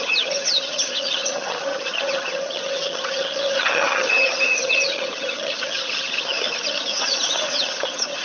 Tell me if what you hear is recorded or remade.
remade